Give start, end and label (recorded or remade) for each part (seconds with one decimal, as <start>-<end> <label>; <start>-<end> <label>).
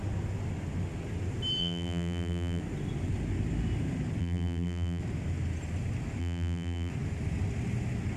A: 0.0-1.6 recorded; 1.6-2.6 remade; 2.6-4.2 recorded; 4.2-5.0 remade; 5.0-6.2 recorded; 6.2-6.9 remade; 6.9-8.2 recorded